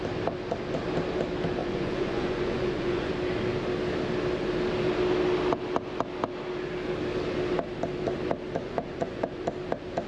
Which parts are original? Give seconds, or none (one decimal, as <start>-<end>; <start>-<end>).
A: 0.0-1.6; 3.1-8.6; 9.4-10.1